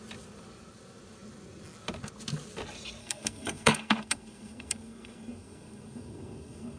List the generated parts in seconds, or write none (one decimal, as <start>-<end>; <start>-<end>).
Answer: 3.0-6.8